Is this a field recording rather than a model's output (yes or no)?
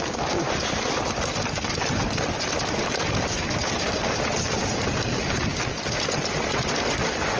yes